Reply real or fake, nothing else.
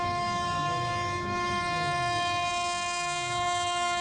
fake